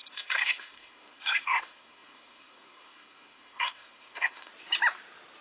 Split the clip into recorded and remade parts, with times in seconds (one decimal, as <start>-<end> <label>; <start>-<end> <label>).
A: 0.0-4.5 remade; 4.5-5.4 recorded